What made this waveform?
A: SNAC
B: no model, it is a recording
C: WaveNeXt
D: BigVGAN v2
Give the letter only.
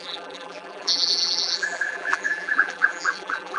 D